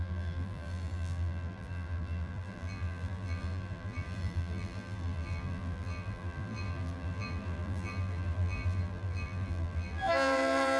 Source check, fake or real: fake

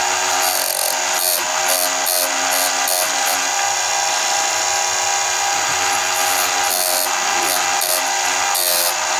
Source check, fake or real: real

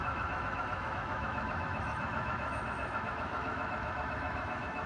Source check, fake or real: fake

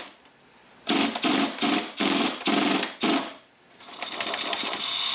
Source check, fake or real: real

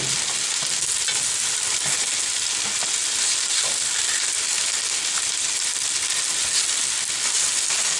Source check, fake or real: real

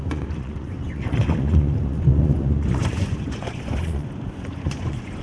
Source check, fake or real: fake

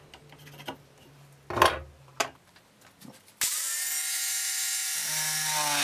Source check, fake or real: real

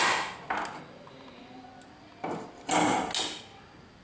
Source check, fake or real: real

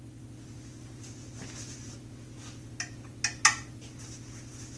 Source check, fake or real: real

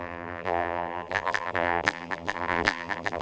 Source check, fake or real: fake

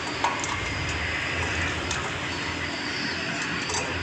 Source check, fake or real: real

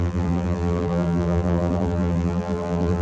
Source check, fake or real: fake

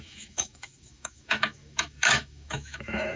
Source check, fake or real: fake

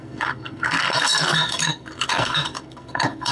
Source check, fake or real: fake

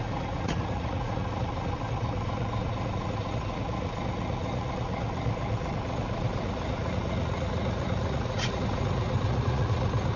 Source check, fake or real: fake